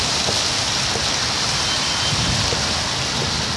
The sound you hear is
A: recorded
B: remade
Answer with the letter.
A